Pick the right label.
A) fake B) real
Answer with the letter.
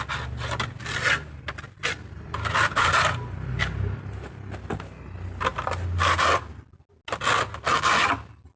B